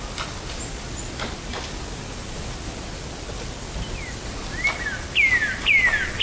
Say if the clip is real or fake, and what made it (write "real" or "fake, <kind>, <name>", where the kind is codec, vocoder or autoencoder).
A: real